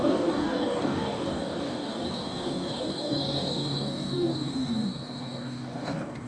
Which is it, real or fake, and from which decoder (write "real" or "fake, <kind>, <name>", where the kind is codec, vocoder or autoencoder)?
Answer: fake, codec, DAC